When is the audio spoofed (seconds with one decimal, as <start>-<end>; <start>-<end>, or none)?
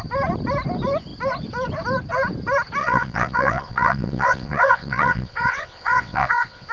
2.8-6.7